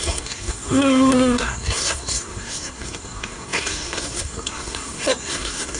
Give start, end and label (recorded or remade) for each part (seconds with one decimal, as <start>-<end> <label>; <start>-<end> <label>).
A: 0.0-5.8 remade